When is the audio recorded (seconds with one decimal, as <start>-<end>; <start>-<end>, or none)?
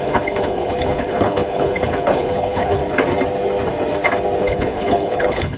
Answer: 2.8-4.4